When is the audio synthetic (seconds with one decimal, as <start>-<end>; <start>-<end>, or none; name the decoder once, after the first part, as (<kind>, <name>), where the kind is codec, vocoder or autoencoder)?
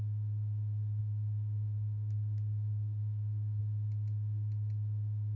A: 1.0-3.6 (codec, DAC)